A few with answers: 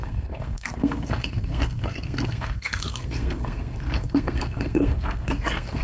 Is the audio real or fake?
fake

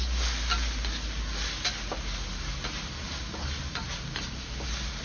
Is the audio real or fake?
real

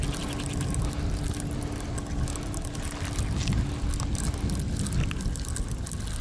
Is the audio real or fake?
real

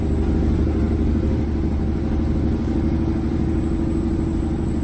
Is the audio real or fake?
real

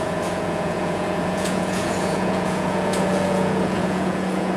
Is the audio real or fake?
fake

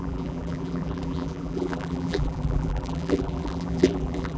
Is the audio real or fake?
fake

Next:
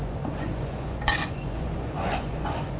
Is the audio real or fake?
fake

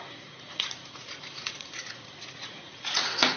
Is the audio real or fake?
fake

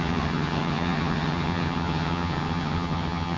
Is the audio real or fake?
fake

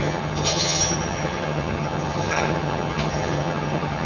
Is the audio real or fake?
fake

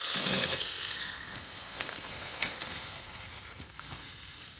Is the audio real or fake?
fake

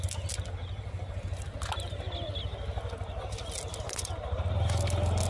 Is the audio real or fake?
real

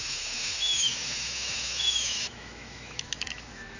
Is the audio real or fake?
fake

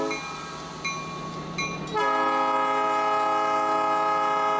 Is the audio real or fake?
real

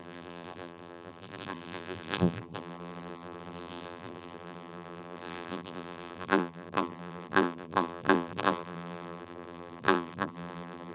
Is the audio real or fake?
fake